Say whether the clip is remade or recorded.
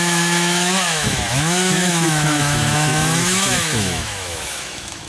remade